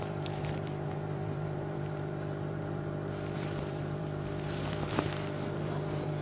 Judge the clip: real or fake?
fake